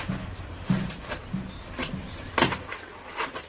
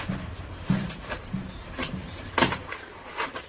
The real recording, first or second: first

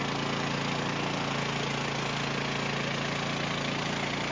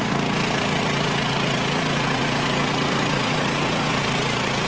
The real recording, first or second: first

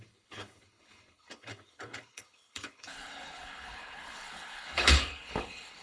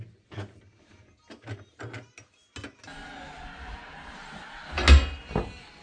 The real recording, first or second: second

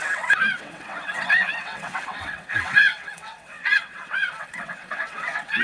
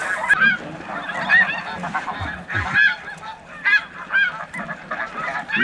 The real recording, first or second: second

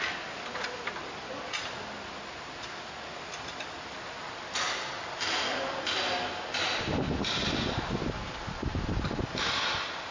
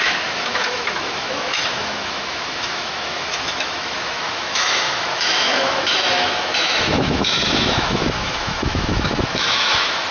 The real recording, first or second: first